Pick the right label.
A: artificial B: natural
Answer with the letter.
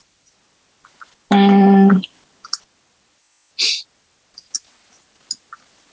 B